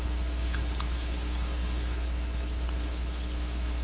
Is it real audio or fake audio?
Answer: fake